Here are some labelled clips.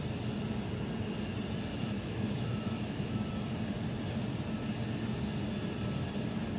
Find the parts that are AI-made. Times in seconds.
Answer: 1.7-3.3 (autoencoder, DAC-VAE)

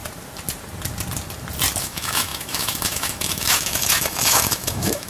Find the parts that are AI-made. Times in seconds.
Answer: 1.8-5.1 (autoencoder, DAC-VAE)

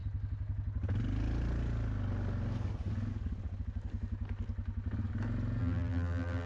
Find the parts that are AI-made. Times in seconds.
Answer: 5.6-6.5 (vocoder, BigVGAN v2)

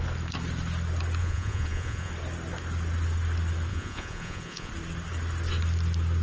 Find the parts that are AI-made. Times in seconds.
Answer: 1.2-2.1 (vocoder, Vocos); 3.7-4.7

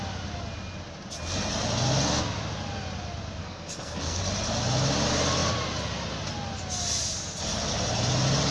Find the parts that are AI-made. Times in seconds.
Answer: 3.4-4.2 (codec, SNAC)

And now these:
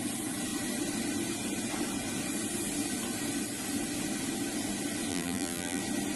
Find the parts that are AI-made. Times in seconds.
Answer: 5.1-5.8 (vocoder, BigVGAN v2)